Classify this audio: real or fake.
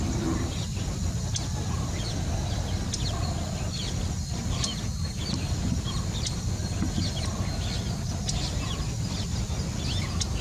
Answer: real